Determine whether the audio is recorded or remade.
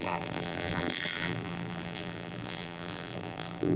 remade